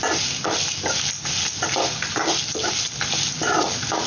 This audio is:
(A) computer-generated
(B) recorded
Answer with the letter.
B